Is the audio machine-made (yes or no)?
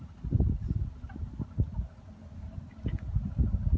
no